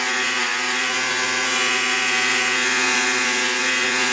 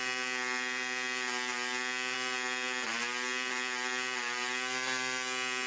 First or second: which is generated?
first